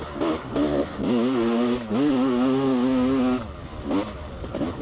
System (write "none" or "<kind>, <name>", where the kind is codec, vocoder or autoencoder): none